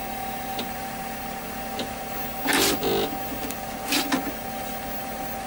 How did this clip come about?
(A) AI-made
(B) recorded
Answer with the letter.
B